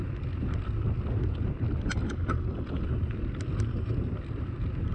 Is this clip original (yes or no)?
yes